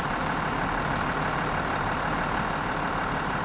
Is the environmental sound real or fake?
fake